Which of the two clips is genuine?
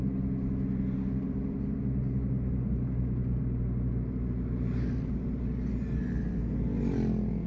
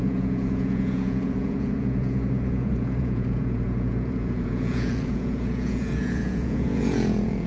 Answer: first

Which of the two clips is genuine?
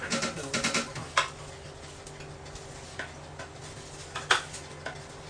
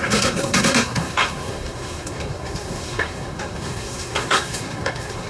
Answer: first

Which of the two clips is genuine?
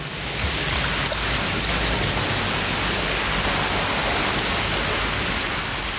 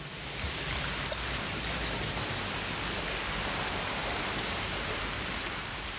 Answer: first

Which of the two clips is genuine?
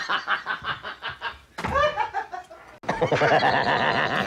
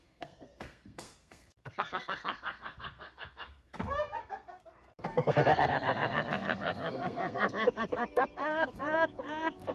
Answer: first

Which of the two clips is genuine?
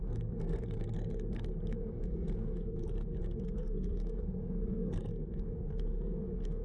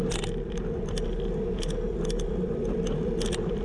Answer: second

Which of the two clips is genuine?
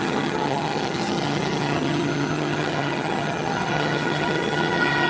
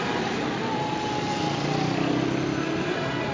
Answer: second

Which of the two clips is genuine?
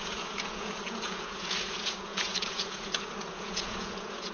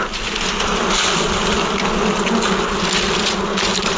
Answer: second